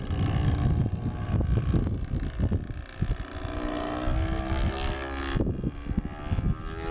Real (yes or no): yes